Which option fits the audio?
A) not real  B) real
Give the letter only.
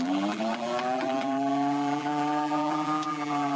A